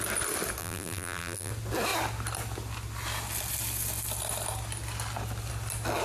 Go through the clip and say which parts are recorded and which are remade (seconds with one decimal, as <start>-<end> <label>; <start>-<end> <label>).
0.0-0.6 recorded; 0.6-1.5 remade; 1.5-6.0 recorded